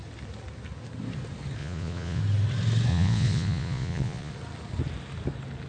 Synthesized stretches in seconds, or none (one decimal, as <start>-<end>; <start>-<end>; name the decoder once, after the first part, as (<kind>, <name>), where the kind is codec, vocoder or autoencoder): 1.6-2.2 (vocoder, Vocos); 2.9-4.3